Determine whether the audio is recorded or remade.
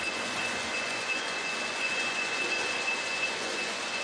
remade